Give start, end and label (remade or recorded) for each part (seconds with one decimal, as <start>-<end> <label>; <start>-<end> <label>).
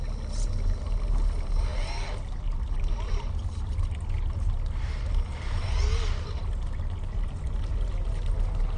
0.0-8.8 recorded